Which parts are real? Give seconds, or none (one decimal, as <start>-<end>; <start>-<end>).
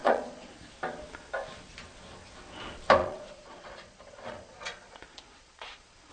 0.5-3.0